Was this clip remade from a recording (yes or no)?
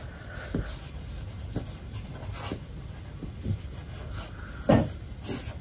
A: no